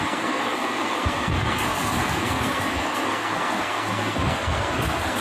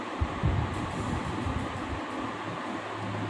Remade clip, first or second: first